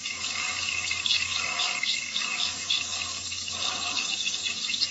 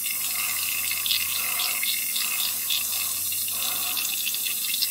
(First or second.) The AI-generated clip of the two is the first